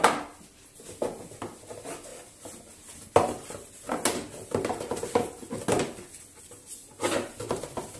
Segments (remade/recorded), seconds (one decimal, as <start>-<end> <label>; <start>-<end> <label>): 0.0-8.0 recorded